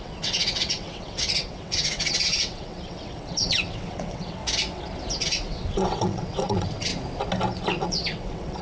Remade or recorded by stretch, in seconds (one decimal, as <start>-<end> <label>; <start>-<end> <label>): 0.0-4.4 remade; 4.4-5.2 recorded; 5.2-6.9 remade; 6.9-7.7 recorded; 7.7-8.6 remade